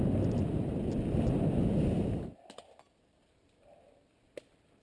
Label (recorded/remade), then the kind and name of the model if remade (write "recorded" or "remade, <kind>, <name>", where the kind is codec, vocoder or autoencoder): recorded